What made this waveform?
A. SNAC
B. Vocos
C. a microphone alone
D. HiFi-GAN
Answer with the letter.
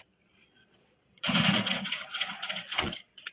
B